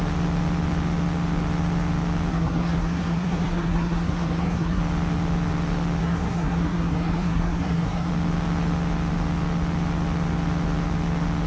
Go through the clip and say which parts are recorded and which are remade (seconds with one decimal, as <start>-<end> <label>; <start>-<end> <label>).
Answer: 0.0-2.3 recorded; 2.3-4.8 remade; 4.8-6.0 recorded; 6.0-8.1 remade; 8.1-11.5 recorded